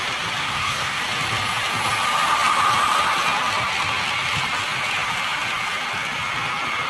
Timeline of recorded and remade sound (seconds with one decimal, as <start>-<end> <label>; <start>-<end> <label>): 0.0-0.4 recorded; 0.4-1.0 remade; 1.0-6.9 recorded